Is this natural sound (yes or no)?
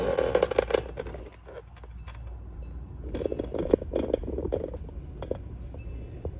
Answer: yes